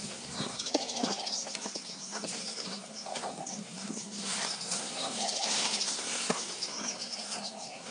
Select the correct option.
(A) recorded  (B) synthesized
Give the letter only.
B